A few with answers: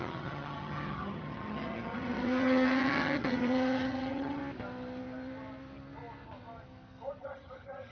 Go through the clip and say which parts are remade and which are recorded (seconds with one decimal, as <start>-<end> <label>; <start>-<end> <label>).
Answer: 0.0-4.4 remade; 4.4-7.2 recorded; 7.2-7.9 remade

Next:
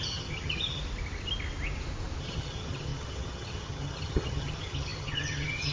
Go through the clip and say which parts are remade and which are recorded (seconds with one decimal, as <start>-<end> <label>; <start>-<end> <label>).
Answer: 0.0-0.8 remade; 0.8-2.2 recorded; 2.2-5.7 remade

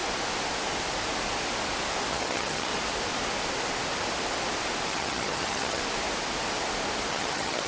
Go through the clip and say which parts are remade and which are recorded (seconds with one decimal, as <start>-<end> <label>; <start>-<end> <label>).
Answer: 0.0-2.1 recorded; 2.1-2.7 remade; 2.7-4.9 recorded; 4.9-5.8 remade; 5.8-7.1 recorded; 7.1-7.7 remade

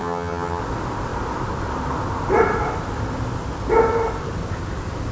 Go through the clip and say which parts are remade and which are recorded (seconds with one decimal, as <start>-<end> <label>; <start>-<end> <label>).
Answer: 0.0-0.6 remade; 0.6-5.1 recorded

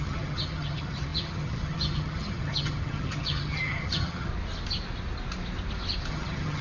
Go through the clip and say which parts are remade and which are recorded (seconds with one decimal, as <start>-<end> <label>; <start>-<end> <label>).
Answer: 0.0-4.3 remade; 4.3-6.1 recorded; 6.1-6.6 remade

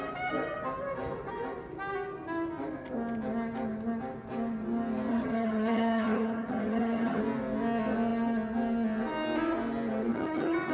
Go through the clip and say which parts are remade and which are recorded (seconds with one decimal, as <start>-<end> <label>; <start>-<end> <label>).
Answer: 0.0-5.1 recorded; 5.1-7.2 remade; 7.2-10.1 recorded; 10.1-10.7 remade

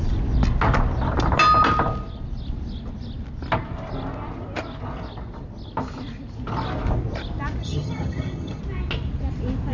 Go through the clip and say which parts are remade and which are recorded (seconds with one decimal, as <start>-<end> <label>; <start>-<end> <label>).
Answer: 0.0-7.6 recorded; 7.6-8.6 remade; 8.6-9.7 recorded